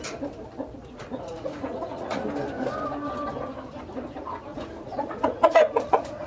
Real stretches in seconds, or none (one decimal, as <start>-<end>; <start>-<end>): 0.0-1.1; 2.2-4.5